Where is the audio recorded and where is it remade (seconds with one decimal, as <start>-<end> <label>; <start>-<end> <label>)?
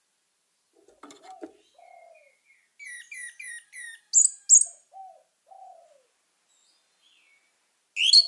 0.0-8.3 recorded